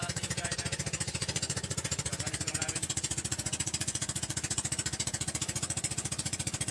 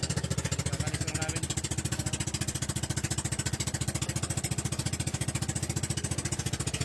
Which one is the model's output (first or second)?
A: first